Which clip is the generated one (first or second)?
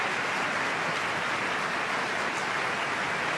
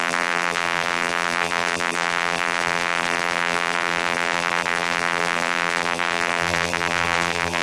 second